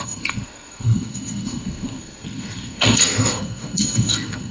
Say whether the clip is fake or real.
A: fake